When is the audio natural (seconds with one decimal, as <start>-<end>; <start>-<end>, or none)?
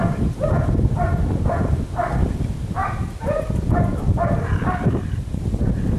0.0-2.8; 5.4-6.0